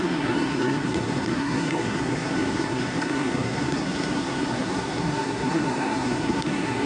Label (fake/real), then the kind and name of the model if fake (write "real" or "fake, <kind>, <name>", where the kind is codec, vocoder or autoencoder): fake, codec, SNAC